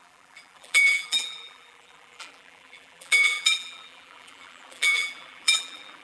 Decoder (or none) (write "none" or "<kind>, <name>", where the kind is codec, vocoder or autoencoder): vocoder, BigVGAN v2